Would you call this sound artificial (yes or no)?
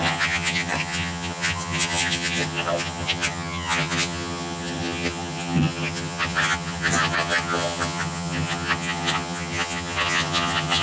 yes